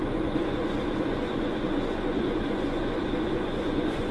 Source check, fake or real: fake